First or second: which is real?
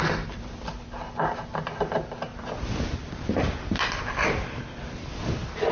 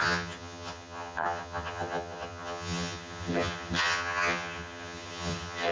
first